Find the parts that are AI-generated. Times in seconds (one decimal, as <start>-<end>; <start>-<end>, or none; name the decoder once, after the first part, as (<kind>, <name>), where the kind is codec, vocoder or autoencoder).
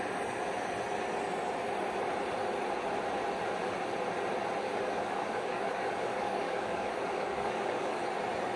4.6-8.0 (codec, DAC)